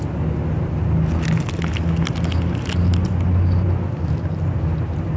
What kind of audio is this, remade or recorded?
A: recorded